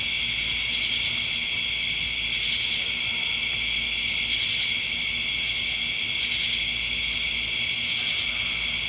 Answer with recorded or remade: recorded